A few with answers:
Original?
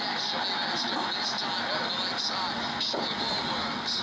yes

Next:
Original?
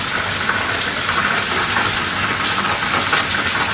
yes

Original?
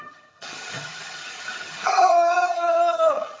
no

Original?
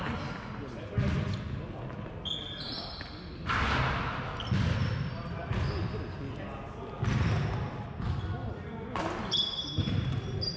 yes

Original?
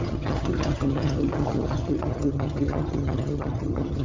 no